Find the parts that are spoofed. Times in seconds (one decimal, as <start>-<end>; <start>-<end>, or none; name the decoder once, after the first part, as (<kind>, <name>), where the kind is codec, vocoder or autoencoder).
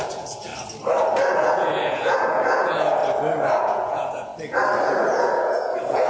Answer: 0.0-0.5 (vocoder, Vocos); 1.3-3.0; 3.6-4.3; 5.1-6.1